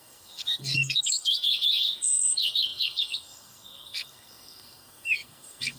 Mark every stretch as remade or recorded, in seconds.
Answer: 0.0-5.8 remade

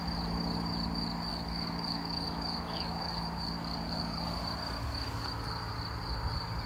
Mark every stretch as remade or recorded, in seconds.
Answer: 0.0-1.3 recorded; 1.3-4.4 remade; 4.4-6.7 recorded

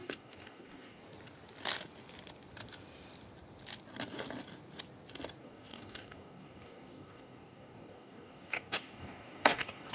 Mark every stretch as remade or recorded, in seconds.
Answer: 0.0-1.0 remade; 1.0-5.4 recorded; 5.4-9.9 remade

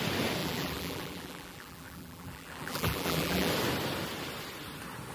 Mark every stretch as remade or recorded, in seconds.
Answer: 0.0-0.4 recorded; 0.4-3.5 remade; 3.5-5.1 recorded

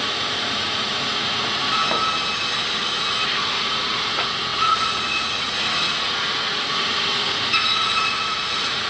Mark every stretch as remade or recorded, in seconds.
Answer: 0.0-1.8 remade; 1.8-3.0 recorded; 3.0-8.9 remade

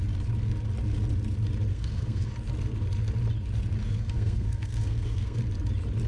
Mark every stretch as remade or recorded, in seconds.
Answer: 0.0-1.7 recorded; 1.7-2.3 remade; 2.3-3.8 recorded; 3.8-5.4 remade; 5.4-6.1 recorded

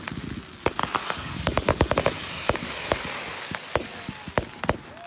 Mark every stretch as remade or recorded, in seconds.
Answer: 0.0-1.0 recorded; 1.0-4.1 remade; 4.1-5.1 recorded